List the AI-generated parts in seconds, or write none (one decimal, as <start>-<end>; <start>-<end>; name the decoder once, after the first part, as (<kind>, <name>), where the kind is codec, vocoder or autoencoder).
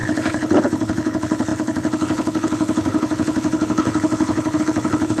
0.0-5.2 (codec, HILCodec)